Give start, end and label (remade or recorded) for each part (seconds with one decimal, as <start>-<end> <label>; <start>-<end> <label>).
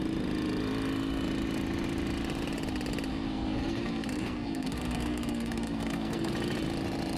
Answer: 0.0-3.1 recorded; 3.1-6.3 remade; 6.3-7.2 recorded